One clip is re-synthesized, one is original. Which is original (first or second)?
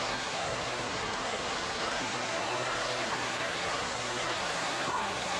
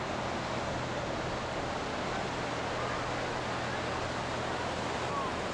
second